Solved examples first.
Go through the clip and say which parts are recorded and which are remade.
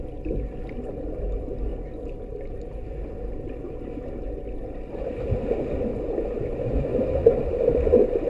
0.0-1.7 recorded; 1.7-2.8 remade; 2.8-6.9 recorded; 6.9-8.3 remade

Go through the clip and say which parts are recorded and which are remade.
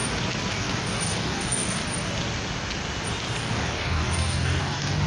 0.0-0.5 recorded; 0.5-1.8 remade; 1.8-3.4 recorded; 3.4-5.1 remade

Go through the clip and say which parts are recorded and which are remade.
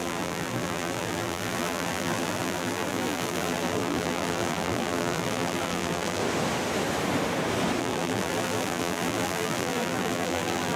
0.0-6.2 remade; 6.2-7.8 recorded; 7.8-10.8 remade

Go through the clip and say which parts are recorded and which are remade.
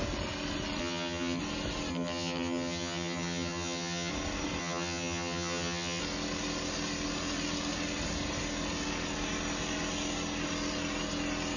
0.0-0.8 recorded; 0.8-1.4 remade; 1.4-1.9 recorded; 1.9-4.1 remade; 4.1-4.6 recorded; 4.6-6.0 remade; 6.0-11.6 recorded